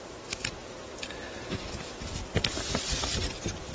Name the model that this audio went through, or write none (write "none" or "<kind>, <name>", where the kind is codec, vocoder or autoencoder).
vocoder, BigVGAN v2